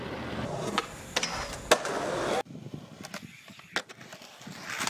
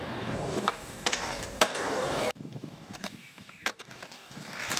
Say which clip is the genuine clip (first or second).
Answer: first